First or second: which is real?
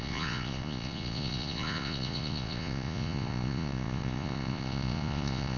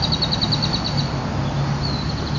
second